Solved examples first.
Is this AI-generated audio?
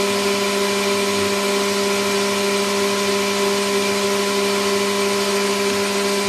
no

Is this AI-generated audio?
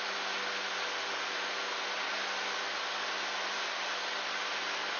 no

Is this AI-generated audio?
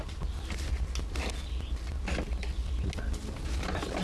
no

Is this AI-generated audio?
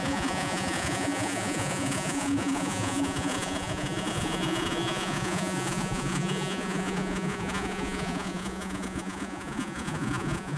yes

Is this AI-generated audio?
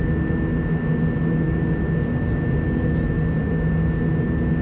no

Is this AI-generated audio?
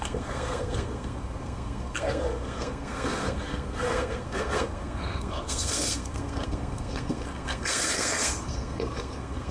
yes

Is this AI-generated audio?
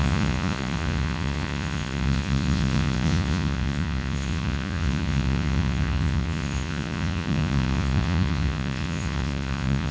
yes